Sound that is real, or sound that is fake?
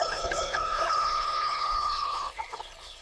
fake